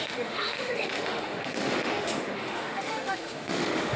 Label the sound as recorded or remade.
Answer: remade